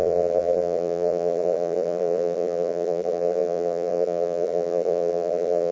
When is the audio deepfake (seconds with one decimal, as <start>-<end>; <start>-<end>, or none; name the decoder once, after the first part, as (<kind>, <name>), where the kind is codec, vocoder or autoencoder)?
0.0-5.7 (vocoder, BigVGAN v2)